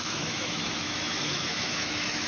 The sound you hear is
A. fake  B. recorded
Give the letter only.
A